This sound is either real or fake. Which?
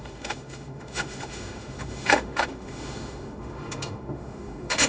fake